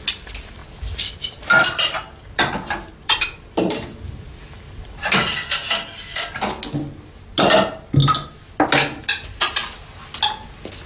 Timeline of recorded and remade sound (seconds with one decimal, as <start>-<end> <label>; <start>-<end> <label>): 0.0-0.6 recorded; 0.6-5.1 remade; 5.1-10.9 recorded